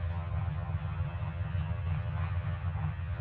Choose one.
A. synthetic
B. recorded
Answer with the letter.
A